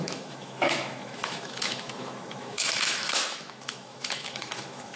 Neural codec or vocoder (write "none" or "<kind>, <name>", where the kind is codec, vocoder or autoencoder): autoencoder, DAC-VAE